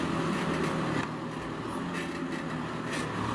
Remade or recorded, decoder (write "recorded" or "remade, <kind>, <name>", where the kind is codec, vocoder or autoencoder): recorded